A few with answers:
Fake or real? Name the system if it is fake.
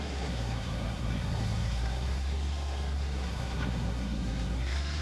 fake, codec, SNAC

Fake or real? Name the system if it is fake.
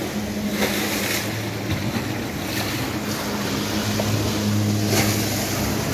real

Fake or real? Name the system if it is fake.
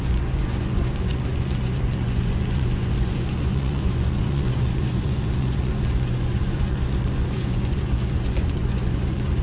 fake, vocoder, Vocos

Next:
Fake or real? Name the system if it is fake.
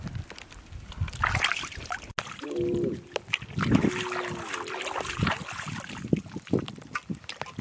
real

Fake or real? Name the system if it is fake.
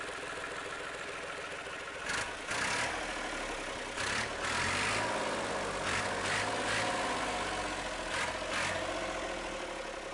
real